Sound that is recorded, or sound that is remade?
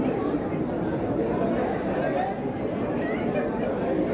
recorded